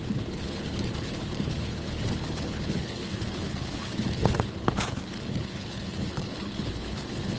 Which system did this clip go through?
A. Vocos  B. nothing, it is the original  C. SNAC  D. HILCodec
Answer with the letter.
D